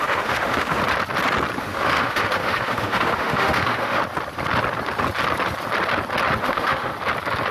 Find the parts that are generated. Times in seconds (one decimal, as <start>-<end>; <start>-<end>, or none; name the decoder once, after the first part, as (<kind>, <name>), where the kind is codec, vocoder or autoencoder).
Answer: 0.0-0.8 (autoencoder, DAC-VAE); 1.6-4.0; 6.4-6.9